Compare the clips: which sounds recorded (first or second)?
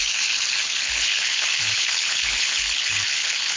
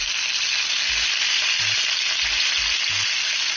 second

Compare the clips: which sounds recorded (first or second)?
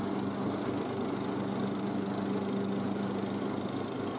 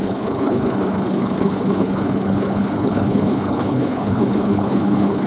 first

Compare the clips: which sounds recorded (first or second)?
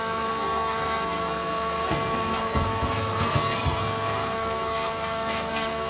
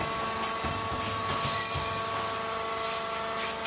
second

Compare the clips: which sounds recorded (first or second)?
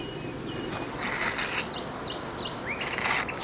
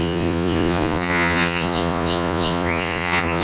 first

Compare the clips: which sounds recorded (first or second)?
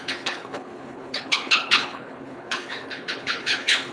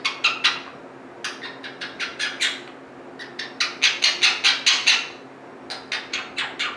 second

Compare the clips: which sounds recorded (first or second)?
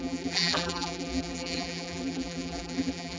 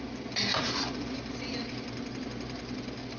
second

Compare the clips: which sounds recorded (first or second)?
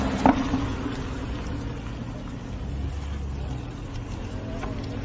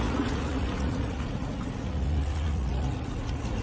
first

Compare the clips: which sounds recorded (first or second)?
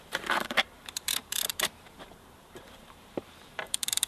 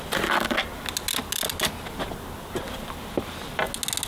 second